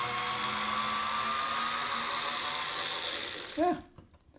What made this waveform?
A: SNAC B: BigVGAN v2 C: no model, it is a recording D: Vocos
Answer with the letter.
C